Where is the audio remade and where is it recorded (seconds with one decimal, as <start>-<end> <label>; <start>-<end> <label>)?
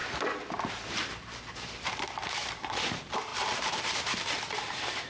0.0-0.7 recorded; 0.7-5.1 remade